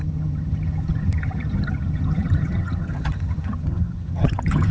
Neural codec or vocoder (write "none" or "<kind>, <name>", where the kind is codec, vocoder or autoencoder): vocoder, HiFi-GAN